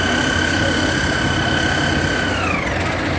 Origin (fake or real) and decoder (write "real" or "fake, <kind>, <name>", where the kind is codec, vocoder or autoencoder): real